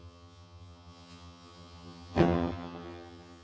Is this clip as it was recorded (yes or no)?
no